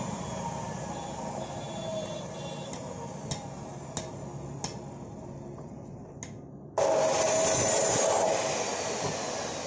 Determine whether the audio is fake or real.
real